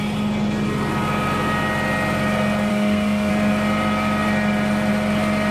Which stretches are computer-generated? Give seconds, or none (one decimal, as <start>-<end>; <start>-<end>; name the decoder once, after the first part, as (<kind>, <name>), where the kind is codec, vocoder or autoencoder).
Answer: 2.7-3.3 (codec, SNAC)